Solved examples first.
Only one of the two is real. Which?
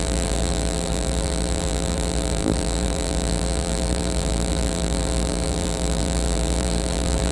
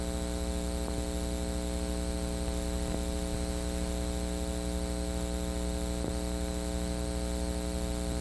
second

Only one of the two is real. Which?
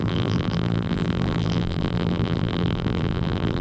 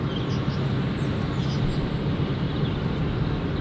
second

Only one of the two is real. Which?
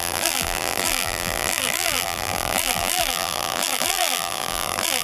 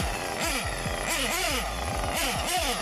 second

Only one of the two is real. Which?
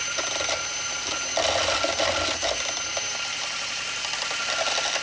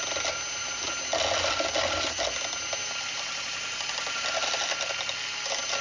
second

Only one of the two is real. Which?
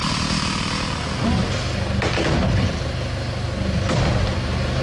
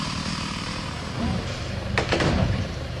first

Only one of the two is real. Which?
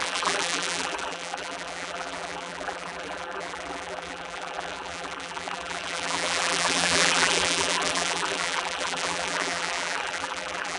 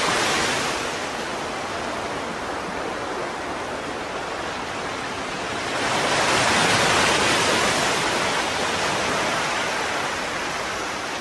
second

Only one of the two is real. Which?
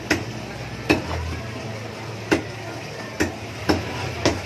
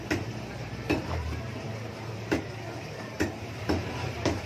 first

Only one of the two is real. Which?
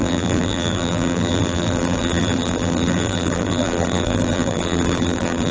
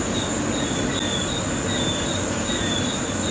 second